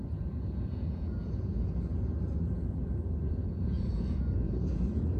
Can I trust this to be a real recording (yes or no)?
no